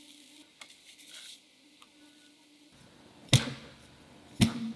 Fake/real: real